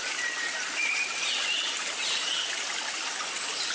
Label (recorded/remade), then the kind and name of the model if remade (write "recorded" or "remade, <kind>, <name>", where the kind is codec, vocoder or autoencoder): recorded